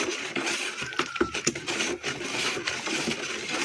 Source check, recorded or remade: remade